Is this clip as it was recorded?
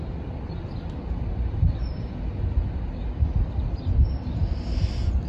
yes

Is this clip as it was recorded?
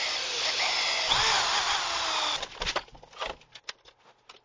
yes